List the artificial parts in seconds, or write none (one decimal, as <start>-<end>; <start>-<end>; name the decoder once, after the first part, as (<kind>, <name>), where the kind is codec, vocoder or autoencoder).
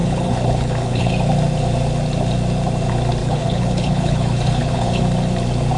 0.0-1.1 (codec, HILCodec); 3.2-5.0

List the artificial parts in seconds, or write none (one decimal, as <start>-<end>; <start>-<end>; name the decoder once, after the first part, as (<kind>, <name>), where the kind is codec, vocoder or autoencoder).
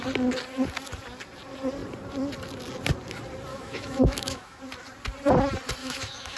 3.5-4.6 (autoencoder, DAC-VAE); 5.8-6.4